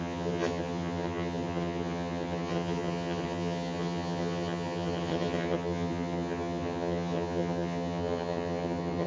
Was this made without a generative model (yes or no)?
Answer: no